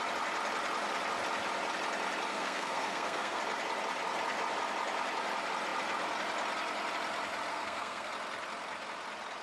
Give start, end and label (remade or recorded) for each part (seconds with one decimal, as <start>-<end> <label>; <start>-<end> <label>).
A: 0.0-2.3 recorded; 2.3-3.4 remade; 3.4-7.5 recorded; 7.5-8.1 remade; 8.1-9.4 recorded